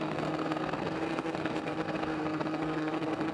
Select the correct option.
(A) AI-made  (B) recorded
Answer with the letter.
A